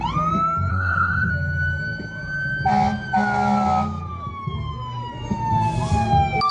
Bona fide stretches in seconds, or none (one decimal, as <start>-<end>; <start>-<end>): 0.0-0.7; 1.3-6.5